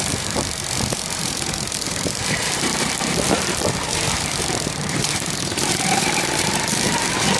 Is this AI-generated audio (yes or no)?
yes